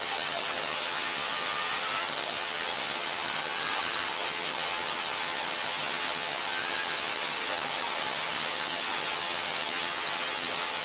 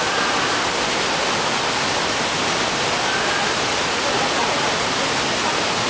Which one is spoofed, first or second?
first